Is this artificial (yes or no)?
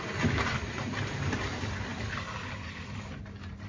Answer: no